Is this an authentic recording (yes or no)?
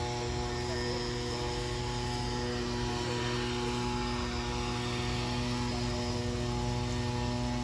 yes